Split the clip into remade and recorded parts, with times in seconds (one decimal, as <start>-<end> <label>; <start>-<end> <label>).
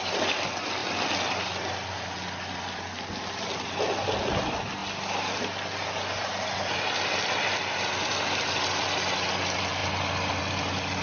0.0-11.0 recorded